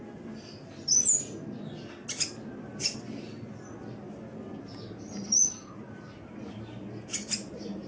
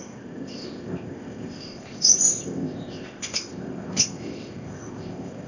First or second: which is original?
first